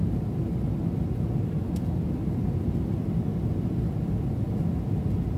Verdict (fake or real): real